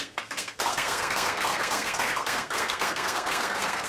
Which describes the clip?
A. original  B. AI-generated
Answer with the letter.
B